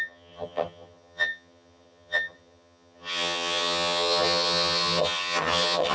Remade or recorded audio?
remade